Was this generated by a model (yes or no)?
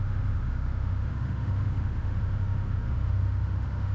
yes